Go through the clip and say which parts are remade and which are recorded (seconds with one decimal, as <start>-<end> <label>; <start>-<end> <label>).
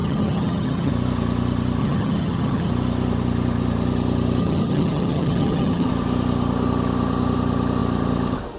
0.0-0.9 remade; 0.9-1.8 recorded; 1.8-2.7 remade; 2.7-4.4 recorded; 4.4-5.9 remade; 5.9-8.6 recorded